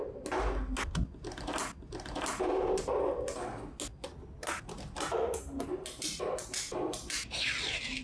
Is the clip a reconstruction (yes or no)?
no